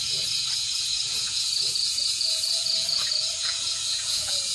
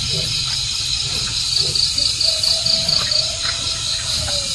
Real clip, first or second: second